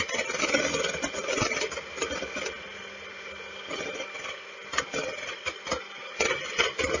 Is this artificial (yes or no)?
no